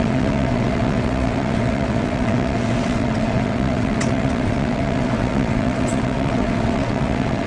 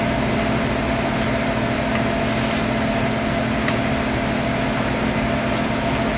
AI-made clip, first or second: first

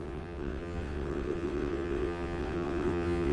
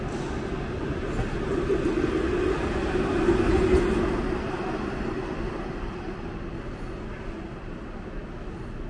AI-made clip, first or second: first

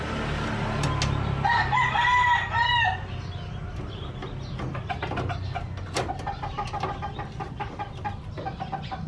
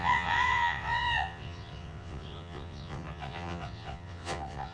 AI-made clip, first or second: second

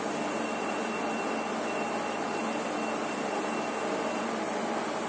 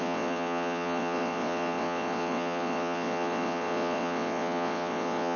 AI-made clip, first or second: second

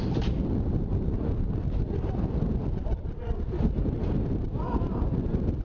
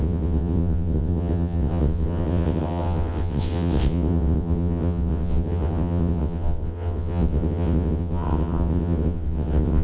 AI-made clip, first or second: second